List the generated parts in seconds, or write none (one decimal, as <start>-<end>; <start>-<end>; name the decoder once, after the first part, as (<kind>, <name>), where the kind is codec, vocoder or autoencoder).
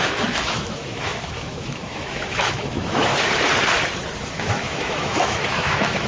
0.0-3.1 (autoencoder, DAC-VAE); 4.2-6.1